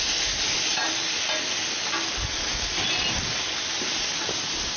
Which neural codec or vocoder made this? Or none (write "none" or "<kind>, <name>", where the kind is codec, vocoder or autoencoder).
none